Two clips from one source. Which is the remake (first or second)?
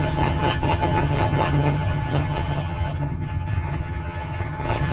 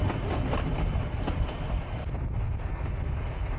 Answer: first